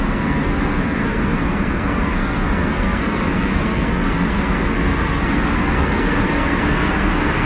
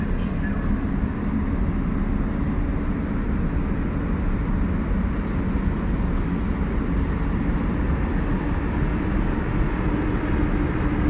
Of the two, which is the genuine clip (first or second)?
second